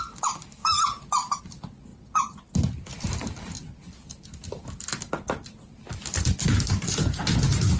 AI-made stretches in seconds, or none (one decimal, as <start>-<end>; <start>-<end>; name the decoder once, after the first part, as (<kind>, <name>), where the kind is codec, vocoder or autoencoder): none